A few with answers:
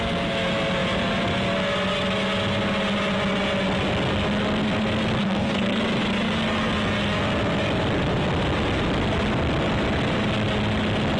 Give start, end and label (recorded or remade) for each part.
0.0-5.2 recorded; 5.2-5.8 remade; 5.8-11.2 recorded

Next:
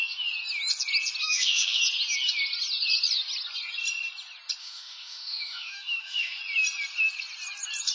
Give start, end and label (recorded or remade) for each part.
0.0-1.2 recorded; 1.2-1.8 remade; 1.8-4.6 recorded; 4.6-6.4 remade; 6.4-7.9 recorded